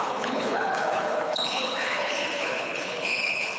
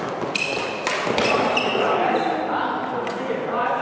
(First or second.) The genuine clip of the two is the second